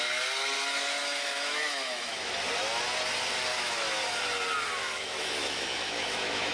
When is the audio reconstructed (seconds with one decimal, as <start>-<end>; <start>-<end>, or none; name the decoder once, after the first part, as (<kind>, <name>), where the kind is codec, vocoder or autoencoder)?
1.0-2.3 (autoencoder, DAC-VAE); 3.5-4.2; 4.8-6.5